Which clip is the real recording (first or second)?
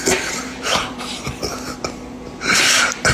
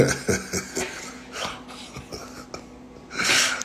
second